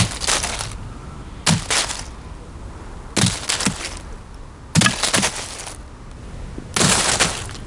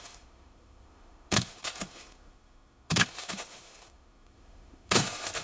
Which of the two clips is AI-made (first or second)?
second